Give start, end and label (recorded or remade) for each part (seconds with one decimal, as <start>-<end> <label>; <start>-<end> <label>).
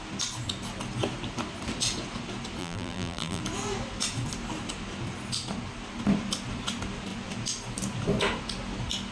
0.0-2.6 recorded; 2.6-3.4 remade; 3.4-9.1 recorded